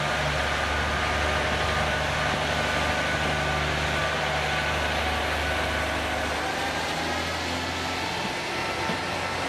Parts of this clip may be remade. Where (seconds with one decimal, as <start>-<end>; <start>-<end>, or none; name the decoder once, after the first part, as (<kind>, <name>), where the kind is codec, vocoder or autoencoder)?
8.6-9.1 (vocoder, BigVGAN v2)